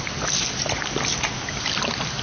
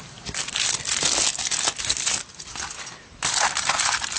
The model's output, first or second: second